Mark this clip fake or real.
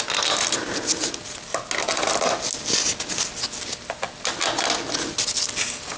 real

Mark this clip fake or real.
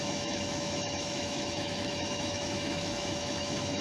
fake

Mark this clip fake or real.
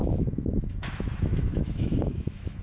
fake